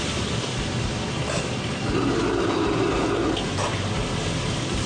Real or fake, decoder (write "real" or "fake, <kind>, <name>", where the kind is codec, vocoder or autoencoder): real